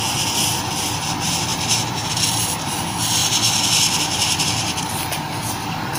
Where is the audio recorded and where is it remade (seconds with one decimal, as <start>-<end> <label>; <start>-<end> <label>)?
0.0-1.5 recorded; 1.5-2.8 remade; 2.8-6.0 recorded